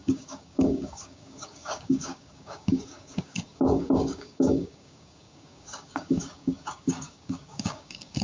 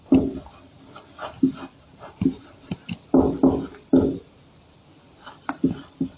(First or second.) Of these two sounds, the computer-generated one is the first